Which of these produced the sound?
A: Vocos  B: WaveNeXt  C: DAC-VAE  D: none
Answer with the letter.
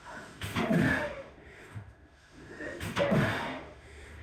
C